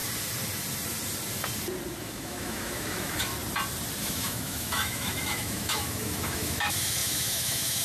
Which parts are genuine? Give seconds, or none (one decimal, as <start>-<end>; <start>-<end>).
0.0-2.0; 3.3-4.0